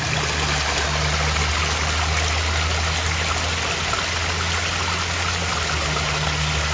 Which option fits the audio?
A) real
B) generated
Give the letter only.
A